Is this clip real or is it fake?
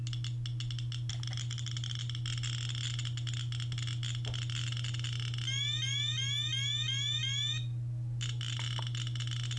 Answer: real